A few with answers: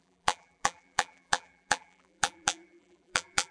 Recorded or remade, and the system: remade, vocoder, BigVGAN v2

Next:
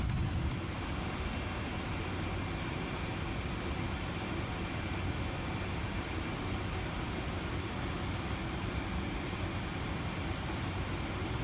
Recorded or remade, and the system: recorded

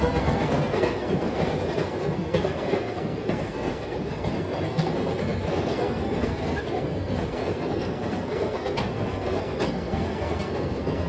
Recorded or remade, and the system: remade, codec, SNAC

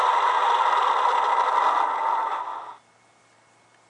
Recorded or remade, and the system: recorded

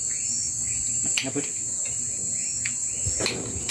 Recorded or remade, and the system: recorded